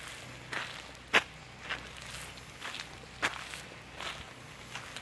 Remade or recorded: recorded